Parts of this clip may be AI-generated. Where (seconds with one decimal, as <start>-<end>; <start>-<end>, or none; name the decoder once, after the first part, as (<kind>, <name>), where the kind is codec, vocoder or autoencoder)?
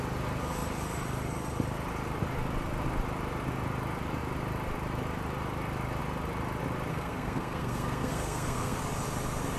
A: 6.9-8.8 (codec, SNAC)